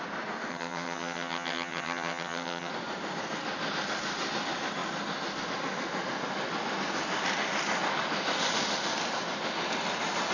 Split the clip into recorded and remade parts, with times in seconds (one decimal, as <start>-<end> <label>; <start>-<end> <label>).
0.0-0.5 recorded; 0.5-2.7 remade; 2.7-10.3 recorded